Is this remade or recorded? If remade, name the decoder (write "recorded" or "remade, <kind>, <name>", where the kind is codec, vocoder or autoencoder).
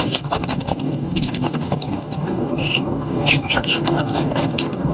remade, codec, DAC